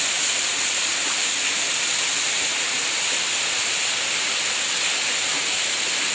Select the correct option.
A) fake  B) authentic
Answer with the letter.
B